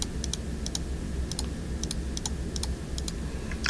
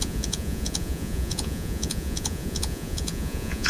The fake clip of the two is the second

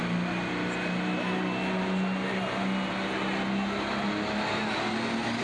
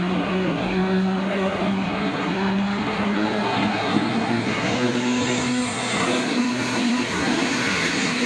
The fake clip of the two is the second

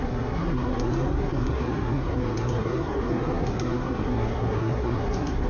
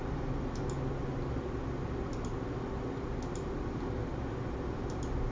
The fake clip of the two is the first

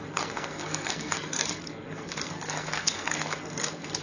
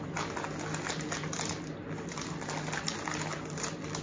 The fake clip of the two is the first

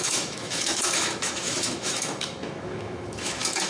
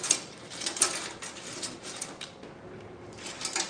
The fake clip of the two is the first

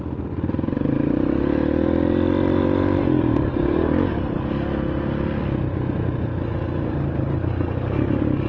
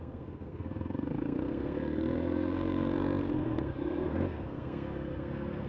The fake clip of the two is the second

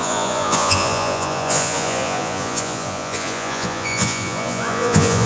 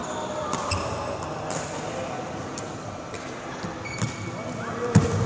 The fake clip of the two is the first